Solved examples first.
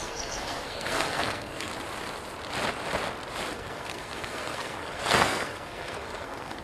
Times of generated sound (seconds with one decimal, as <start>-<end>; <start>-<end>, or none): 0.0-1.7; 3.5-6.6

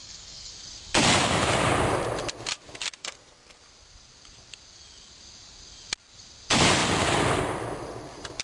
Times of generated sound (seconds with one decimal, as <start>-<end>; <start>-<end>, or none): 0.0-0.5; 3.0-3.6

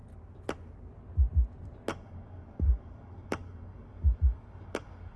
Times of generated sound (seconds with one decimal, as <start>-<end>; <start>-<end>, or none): 1.9-5.2